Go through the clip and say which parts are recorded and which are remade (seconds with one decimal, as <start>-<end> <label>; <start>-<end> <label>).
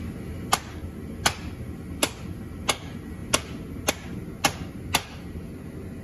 0.0-6.0 recorded